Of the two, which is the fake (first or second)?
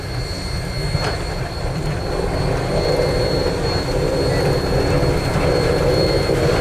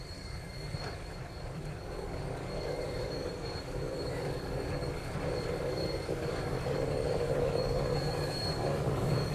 second